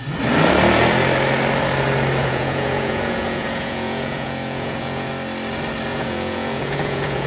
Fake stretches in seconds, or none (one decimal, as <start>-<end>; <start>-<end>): 2.2-5.1; 5.9-7.3